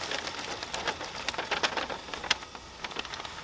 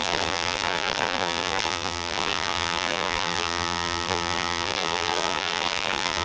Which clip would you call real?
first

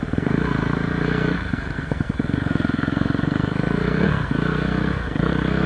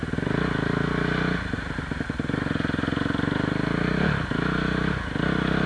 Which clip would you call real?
second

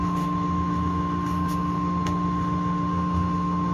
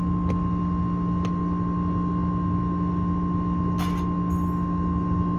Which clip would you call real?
second